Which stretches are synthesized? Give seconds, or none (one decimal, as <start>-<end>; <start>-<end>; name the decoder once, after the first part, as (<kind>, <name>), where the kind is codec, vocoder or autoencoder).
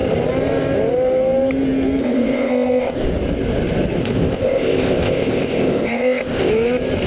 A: 2.0-3.1 (codec, ZipCodec); 4.0-6.5